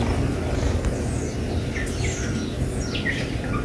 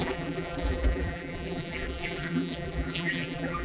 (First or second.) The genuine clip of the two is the first